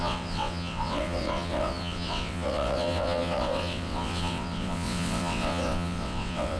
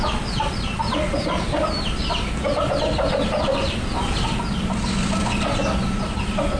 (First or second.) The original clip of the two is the second